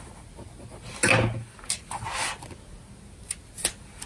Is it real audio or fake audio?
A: real